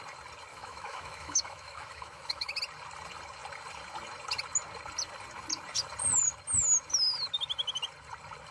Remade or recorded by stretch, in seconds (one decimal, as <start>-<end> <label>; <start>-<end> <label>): 0.0-0.5 recorded; 0.5-2.6 remade; 2.6-8.5 recorded